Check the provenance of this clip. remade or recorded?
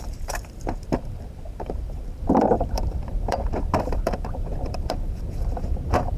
remade